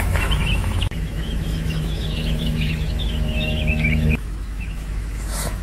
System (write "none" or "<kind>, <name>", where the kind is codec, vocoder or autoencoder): autoencoder, DAC-VAE